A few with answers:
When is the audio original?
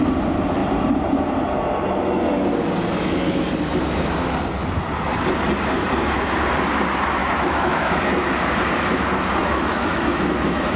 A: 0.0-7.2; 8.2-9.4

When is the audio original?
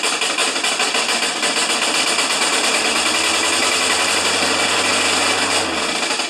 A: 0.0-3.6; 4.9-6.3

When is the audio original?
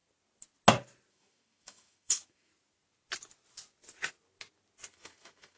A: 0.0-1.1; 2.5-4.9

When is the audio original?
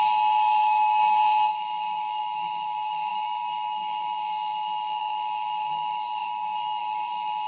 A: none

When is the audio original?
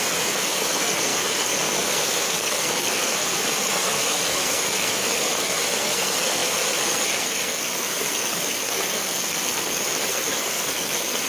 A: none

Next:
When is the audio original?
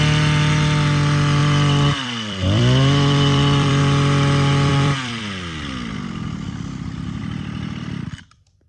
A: 0.0-1.4; 3.8-4.7; 5.2-7.2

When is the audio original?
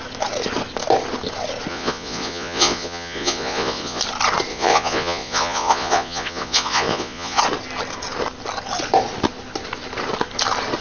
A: 0.0-1.7; 4.0-4.5; 7.4-10.8